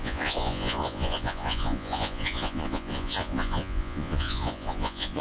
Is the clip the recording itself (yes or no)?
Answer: no